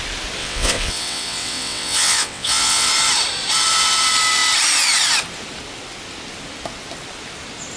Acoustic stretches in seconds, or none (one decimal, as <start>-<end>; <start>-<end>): 0.0-0.4; 2.9-7.8